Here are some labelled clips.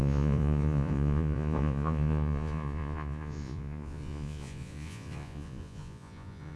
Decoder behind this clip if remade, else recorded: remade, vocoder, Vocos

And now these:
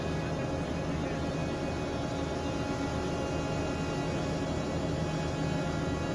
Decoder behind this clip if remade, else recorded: recorded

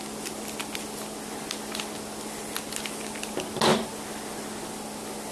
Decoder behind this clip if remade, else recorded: recorded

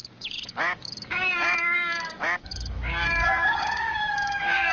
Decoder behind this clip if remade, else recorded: remade, codec, DAC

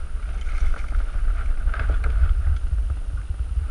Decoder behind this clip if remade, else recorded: recorded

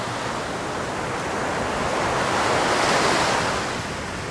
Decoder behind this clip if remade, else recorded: recorded